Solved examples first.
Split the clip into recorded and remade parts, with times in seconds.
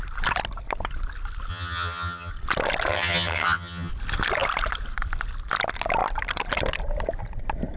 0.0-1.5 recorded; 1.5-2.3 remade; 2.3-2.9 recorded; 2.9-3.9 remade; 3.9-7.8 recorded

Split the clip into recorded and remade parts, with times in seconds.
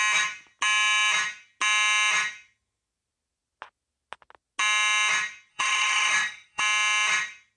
0.0-5.5 recorded; 5.5-6.6 remade; 6.6-7.6 recorded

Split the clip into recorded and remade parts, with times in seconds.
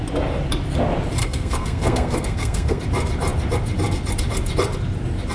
0.0-1.2 recorded; 1.2-2.8 remade; 2.8-5.3 recorded